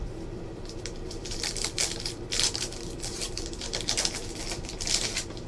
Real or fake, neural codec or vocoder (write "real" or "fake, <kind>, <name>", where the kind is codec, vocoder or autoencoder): fake, vocoder, BigVGAN v2